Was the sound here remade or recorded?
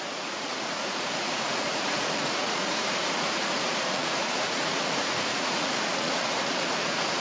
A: remade